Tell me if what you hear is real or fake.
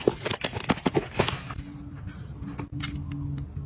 real